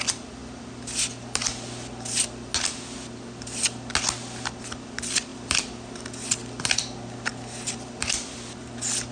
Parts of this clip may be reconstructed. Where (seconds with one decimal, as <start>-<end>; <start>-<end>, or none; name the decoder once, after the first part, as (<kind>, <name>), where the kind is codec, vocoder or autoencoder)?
none